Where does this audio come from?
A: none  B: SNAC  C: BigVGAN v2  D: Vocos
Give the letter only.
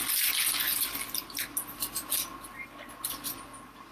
A